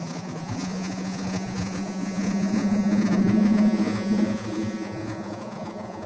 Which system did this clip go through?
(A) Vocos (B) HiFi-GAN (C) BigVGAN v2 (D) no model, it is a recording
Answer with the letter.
A